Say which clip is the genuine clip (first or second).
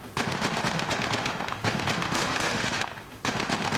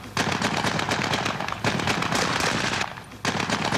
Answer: second